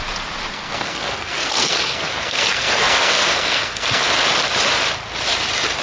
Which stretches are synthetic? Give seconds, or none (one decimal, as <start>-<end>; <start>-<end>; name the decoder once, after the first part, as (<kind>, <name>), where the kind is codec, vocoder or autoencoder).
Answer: 0.5-4.0 (codec, SNAC)